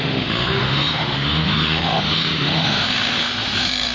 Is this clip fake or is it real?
fake